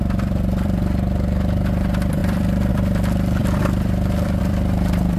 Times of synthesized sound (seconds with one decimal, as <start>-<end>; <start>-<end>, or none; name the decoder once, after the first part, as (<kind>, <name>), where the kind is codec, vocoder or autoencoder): 0.0-5.2 (vocoder, BigVGAN v2)